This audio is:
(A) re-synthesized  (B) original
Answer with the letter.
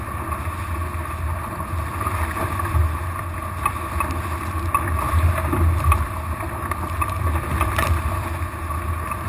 B